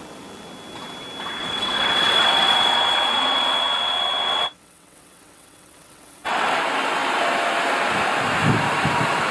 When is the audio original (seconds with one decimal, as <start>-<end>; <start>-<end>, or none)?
0.0-1.4; 6.6-9.3